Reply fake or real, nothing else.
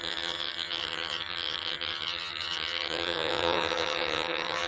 fake